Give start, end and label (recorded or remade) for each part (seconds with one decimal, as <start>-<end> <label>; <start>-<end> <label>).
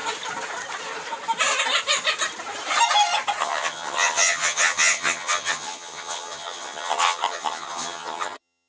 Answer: 0.0-3.4 recorded; 3.4-8.7 remade